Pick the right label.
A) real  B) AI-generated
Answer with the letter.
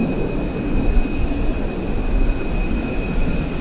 A